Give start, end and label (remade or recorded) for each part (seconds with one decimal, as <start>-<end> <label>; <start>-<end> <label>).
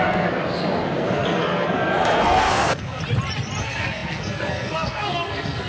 0.0-3.0 remade; 3.0-3.6 recorded; 3.6-5.7 remade